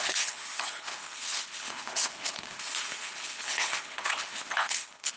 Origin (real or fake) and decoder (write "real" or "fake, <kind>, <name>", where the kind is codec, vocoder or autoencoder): fake, codec, HILCodec